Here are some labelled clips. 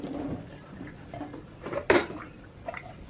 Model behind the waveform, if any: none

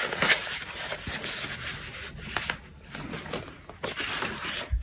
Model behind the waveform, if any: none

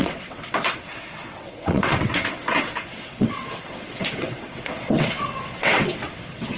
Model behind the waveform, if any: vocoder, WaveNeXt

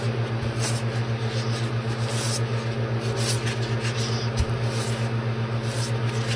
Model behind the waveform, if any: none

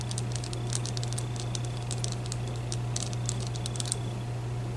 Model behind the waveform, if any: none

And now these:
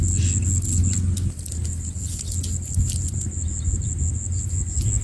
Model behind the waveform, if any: none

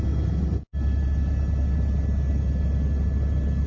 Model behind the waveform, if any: none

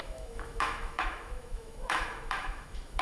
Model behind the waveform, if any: autoencoder, DAC-VAE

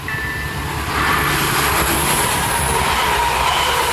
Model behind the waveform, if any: vocoder, BigVGAN v2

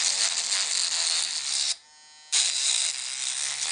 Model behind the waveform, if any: none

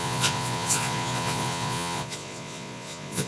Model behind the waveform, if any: vocoder, Vocos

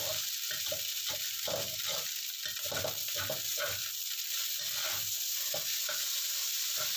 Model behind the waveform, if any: none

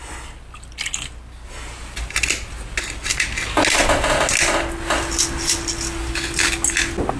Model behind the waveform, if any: none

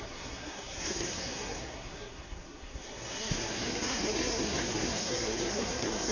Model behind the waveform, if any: codec, SNAC